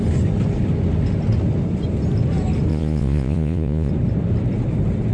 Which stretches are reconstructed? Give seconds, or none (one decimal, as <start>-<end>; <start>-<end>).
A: 2.7-3.9